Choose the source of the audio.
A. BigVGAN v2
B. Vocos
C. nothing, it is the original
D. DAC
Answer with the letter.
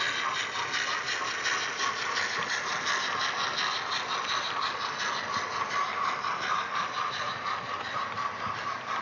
C